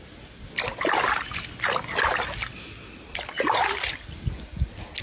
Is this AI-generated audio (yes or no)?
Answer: no